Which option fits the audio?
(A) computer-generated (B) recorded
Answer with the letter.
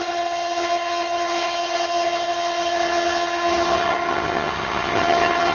A